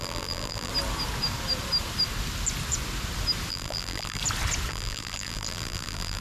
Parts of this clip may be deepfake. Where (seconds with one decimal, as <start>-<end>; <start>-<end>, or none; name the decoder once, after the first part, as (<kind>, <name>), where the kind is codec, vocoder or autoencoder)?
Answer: 0.0-0.7 (vocoder, BigVGAN v2); 3.5-4.2; 4.7-6.2